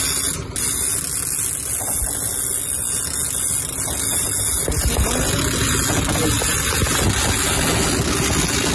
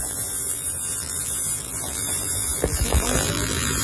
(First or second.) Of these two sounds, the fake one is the second